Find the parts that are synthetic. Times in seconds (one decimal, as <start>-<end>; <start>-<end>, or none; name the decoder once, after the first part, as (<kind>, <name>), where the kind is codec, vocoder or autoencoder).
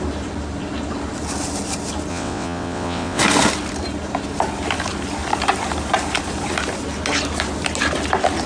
2.1-3.2 (vocoder, WaveNeXt)